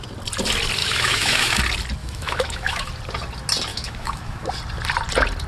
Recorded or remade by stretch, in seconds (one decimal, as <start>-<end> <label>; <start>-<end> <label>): 0.0-0.8 recorded; 0.8-1.6 remade; 1.6-2.0 recorded; 2.0-2.9 remade; 2.9-3.7 recorded; 3.7-4.5 remade; 4.5-5.5 recorded